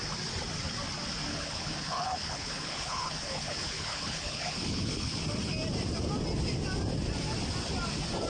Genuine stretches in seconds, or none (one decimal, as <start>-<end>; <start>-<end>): 0.0-1.3; 5.2-8.3